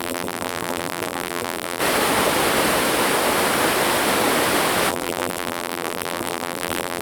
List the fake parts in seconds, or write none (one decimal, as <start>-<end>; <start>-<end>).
0.0-1.8; 4.9-7.0